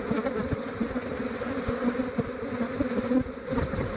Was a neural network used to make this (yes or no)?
no